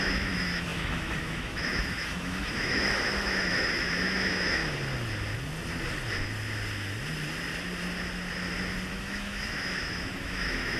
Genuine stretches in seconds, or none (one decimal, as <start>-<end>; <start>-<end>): 4.6-8.9